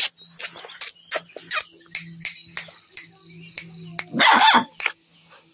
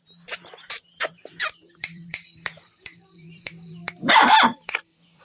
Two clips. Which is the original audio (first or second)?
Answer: first